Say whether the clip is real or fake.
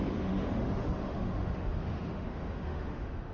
fake